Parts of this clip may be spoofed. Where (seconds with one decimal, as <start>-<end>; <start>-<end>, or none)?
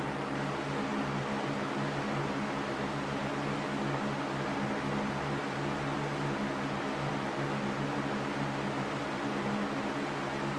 none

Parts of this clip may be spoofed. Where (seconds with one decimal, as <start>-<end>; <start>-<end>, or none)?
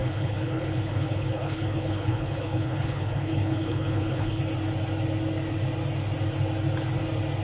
0.0-4.4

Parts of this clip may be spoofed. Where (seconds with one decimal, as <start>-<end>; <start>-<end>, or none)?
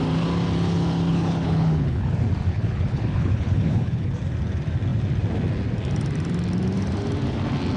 1.1-2.1; 2.5-4.1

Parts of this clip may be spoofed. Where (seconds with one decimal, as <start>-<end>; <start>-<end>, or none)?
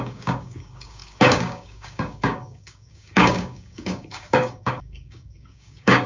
0.0-6.1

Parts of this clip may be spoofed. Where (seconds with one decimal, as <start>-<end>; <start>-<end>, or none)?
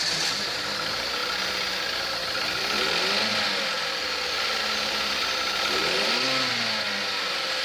none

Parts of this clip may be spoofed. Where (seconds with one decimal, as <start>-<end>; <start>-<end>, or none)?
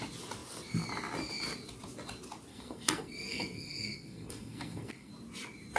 2.5-5.1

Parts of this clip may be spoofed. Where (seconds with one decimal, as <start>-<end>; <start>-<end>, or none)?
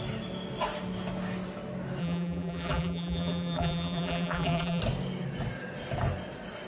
2.0-4.8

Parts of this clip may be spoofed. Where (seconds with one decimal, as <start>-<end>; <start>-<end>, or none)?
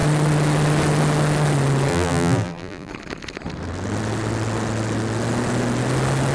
1.9-2.9